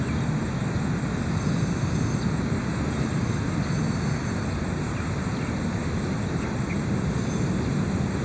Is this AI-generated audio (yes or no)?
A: no